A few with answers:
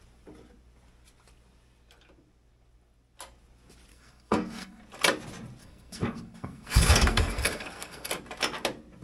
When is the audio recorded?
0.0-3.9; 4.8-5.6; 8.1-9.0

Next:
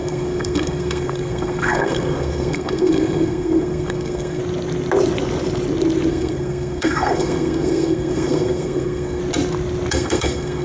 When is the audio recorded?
4.4-6.1; 9.2-9.9

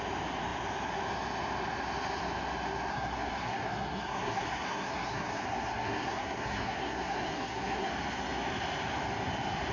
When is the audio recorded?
0.0-2.9; 7.9-9.7

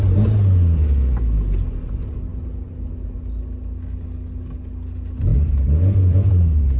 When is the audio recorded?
0.0-6.8

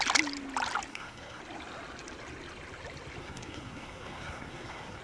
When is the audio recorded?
0.0-0.9; 1.4-3.2